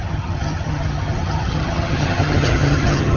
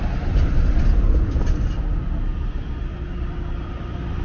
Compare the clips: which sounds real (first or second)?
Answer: second